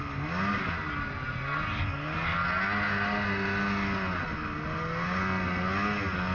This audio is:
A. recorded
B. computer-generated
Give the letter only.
A